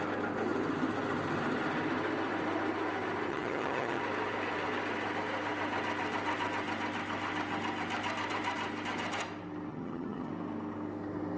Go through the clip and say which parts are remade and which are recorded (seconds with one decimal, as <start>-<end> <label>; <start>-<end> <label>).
0.0-3.3 recorded; 3.3-4.0 remade; 4.0-9.7 recorded; 9.7-10.3 remade; 10.3-11.4 recorded